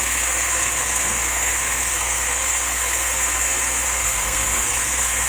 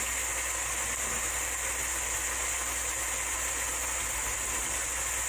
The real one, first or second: second